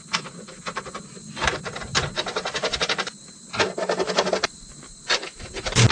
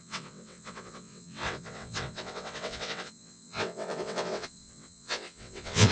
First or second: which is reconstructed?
second